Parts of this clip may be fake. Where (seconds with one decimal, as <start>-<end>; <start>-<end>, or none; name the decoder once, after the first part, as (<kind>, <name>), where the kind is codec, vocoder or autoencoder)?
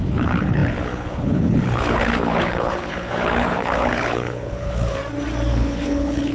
0.0-5.0 (codec, HILCodec); 5.5-6.3